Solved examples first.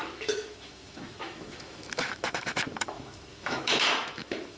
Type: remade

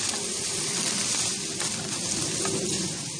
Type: recorded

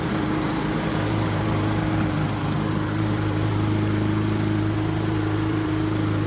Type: remade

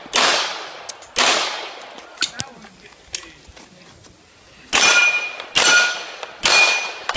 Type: recorded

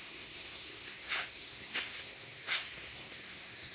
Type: remade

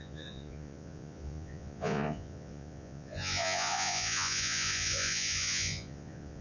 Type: remade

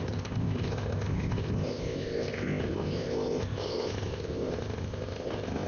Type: remade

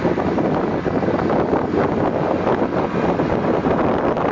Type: recorded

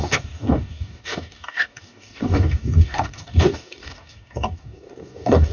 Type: remade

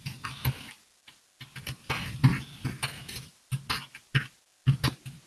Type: recorded